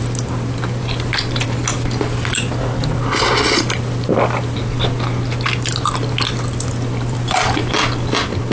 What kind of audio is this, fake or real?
real